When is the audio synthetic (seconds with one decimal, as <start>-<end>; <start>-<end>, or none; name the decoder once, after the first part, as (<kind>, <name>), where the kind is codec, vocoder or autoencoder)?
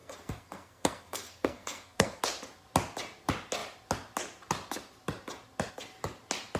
0.0-2.2 (codec, SNAC)